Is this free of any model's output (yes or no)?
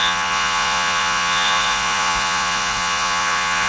no